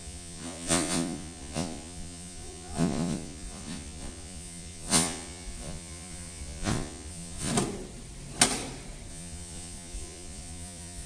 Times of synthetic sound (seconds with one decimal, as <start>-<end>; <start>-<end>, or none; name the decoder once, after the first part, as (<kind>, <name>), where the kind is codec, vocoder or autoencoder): 0.0-7.5 (vocoder, Vocos); 9.1-11.1